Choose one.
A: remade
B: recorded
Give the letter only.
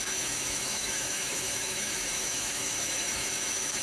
A